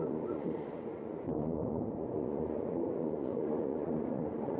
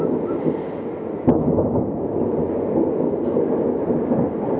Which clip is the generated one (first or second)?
first